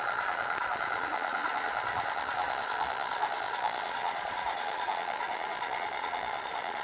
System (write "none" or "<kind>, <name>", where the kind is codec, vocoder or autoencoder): vocoder, Vocos